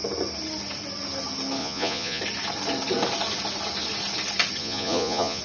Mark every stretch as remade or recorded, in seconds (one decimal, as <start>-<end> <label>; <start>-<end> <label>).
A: 0.0-1.6 recorded; 1.6-2.2 remade; 2.2-4.6 recorded; 4.6-5.4 remade